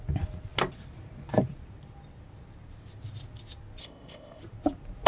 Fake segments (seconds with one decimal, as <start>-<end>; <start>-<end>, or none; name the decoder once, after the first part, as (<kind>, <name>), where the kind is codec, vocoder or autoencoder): 3.8-4.4 (codec, ZipCodec)